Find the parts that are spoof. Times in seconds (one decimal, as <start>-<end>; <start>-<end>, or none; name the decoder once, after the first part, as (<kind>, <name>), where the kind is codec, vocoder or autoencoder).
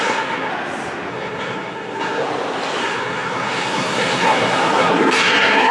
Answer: 0.0-0.5 (codec, SNAC); 1.1-2.2; 2.8-5.7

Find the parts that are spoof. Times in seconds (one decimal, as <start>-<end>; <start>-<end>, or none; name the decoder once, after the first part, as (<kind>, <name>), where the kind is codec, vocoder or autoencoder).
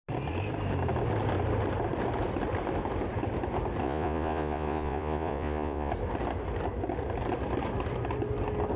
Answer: 3.8-5.9 (vocoder, Vocos)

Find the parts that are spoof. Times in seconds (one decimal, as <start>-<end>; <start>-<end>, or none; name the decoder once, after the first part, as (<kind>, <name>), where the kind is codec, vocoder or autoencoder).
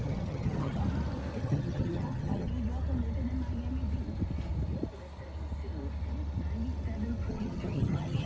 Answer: 0.0-0.8 (vocoder, HiFi-GAN); 1.4-2.5; 7.3-8.3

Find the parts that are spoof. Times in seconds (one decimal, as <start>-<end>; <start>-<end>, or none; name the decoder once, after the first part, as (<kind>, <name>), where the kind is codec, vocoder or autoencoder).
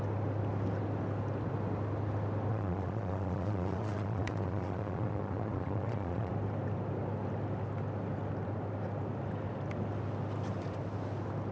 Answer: 2.5-6.3 (vocoder, Vocos)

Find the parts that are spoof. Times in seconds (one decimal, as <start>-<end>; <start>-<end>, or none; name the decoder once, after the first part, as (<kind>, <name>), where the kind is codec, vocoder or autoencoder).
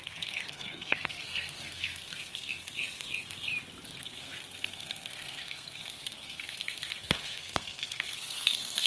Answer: 0.0-3.5 (codec, SNAC); 4.0-8.9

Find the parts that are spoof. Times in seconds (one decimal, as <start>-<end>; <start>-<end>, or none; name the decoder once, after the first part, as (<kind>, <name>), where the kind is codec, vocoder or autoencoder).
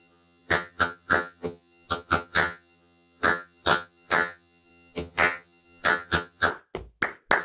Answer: 0.0-6.5 (vocoder, HiFi-GAN)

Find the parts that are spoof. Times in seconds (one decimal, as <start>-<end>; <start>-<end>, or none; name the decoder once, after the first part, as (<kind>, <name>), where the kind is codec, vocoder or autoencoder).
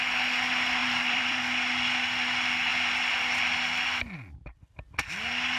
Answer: 0.8-1.4 (vocoder, BigVGAN v2)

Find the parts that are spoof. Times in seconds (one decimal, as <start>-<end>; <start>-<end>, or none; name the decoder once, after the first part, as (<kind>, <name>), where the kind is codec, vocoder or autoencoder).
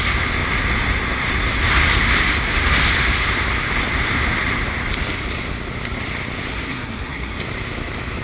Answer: 6.5-7.4 (codec, SNAC)